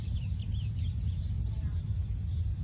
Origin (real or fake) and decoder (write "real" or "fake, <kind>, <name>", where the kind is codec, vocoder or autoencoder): real